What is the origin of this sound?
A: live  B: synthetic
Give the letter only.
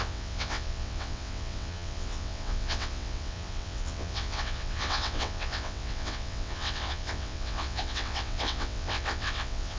B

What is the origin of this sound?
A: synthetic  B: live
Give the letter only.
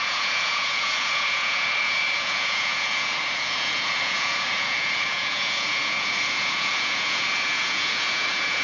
A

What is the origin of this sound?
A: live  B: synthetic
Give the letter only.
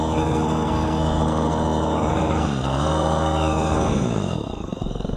B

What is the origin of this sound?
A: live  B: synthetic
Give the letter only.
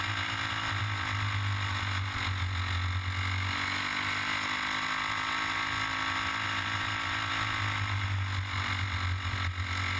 A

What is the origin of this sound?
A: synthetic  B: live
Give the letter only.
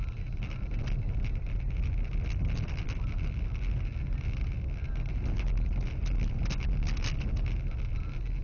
B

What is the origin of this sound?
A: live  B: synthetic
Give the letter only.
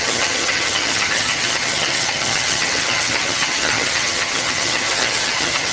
B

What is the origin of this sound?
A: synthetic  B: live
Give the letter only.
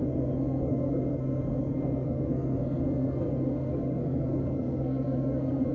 A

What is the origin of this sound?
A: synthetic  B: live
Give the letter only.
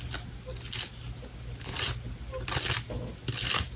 B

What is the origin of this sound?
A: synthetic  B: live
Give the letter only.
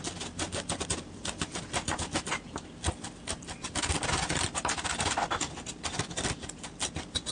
B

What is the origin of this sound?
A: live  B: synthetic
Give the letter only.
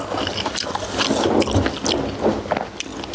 A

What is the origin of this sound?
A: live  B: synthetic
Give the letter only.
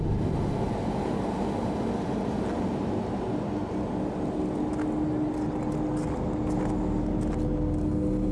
A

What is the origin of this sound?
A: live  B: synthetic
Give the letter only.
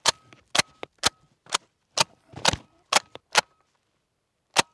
A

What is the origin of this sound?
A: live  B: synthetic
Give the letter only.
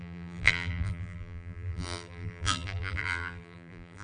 B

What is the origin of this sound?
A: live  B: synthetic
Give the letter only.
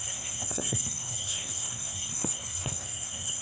B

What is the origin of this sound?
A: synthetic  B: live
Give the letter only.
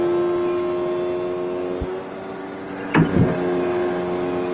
B